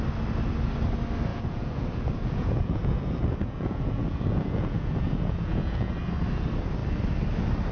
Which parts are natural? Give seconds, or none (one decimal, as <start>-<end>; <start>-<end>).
0.0-1.3; 5.9-7.7